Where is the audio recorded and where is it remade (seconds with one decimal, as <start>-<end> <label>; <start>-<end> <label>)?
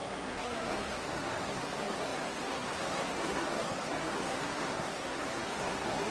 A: 0.0-6.1 remade